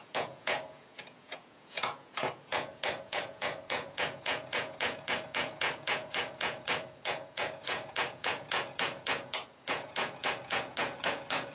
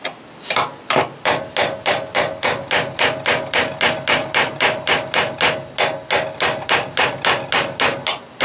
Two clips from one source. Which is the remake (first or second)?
first